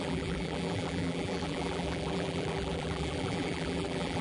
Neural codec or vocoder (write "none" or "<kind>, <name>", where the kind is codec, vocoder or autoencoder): vocoder, BigVGAN v2